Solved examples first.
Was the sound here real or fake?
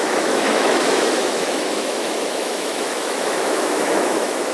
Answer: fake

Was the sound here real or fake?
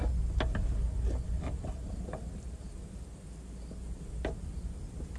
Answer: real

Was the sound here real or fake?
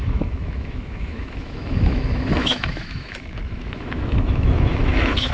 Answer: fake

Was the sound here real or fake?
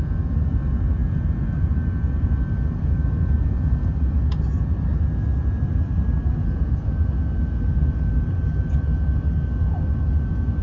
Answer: real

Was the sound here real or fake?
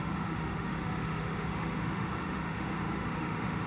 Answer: fake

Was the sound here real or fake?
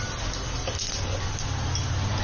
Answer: real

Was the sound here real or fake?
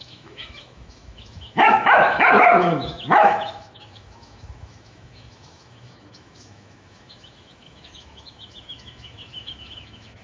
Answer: fake